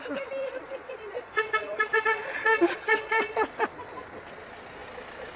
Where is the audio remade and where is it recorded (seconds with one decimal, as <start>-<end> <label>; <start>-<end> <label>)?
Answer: 0.0-0.4 recorded; 0.4-3.6 remade; 3.6-5.4 recorded